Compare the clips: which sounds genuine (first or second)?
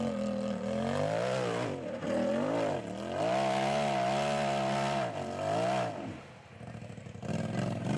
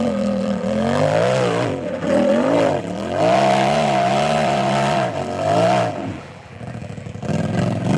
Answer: first